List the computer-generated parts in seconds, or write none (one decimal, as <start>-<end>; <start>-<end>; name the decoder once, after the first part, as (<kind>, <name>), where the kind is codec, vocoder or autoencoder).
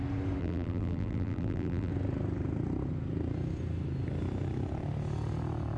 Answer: 0.4-1.9 (vocoder, BigVGAN v2)